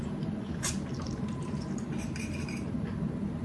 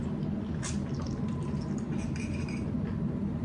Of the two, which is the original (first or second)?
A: second